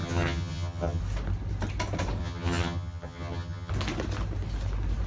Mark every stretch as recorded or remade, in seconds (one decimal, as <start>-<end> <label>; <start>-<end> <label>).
0.0-1.0 remade; 1.0-2.2 recorded; 2.2-3.7 remade; 3.7-5.1 recorded